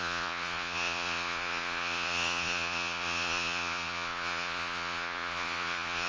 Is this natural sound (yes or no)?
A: no